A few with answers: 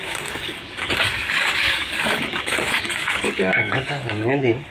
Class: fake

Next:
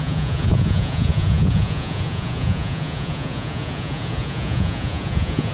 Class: fake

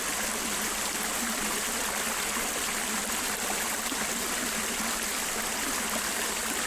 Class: real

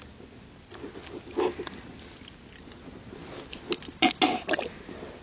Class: real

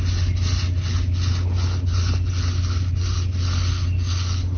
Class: real